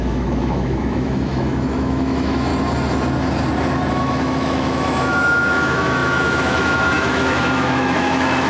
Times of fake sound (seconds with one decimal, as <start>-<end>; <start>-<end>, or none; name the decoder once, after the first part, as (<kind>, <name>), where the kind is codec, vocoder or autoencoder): 0.0-2.5 (autoencoder, DAC-VAE); 3.9-8.5